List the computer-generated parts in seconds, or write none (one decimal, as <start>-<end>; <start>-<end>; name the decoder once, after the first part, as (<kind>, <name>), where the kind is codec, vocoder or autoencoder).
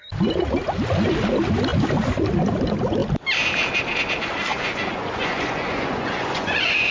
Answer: 4.5-6.9 (vocoder, Vocos)